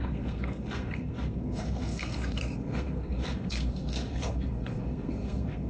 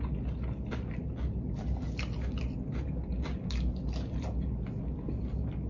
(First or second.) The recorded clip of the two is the second